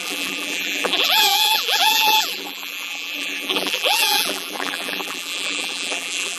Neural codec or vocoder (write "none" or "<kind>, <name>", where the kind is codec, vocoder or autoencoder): vocoder, BigVGAN v2